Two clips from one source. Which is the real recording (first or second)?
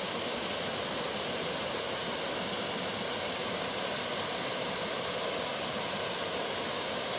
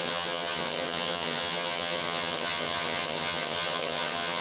first